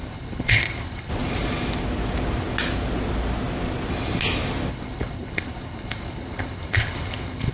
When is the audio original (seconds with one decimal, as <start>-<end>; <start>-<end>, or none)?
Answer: 1.1-4.7